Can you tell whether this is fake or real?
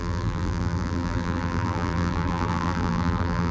fake